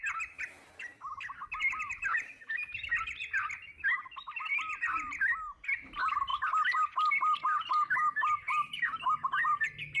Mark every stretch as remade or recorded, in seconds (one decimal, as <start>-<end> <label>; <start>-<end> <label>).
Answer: 0.0-2.4 remade; 2.4-4.2 recorded; 4.2-6.3 remade; 6.3-7.4 recorded; 7.4-10.0 remade